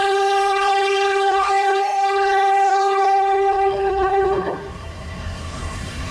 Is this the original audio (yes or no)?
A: no